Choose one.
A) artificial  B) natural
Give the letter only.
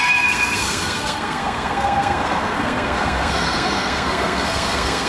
A